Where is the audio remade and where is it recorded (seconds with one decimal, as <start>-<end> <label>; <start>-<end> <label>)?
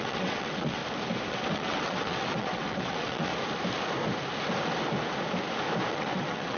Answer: 0.0-0.8 remade; 0.8-1.3 recorded; 1.3-3.3 remade; 3.3-5.9 recorded; 5.9-6.6 remade